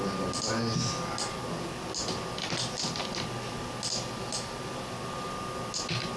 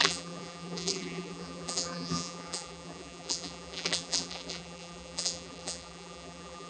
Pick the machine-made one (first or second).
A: second